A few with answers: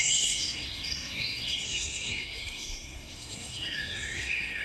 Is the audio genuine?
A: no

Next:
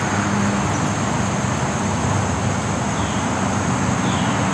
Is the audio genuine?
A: yes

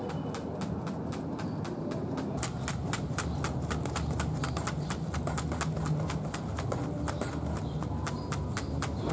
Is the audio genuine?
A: yes